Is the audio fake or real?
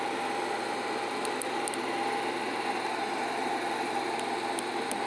real